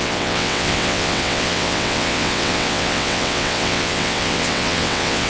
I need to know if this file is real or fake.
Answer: fake